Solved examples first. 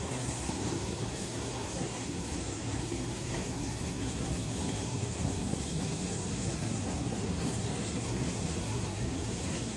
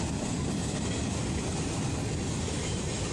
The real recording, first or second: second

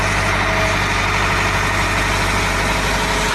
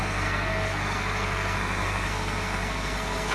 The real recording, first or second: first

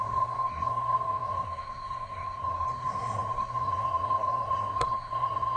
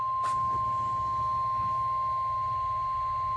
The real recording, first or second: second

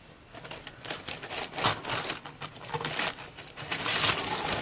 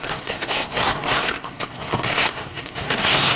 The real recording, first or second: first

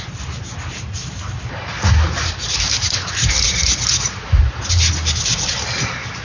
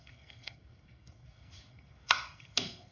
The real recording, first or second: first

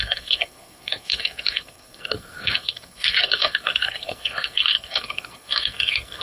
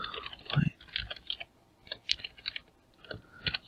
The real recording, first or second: second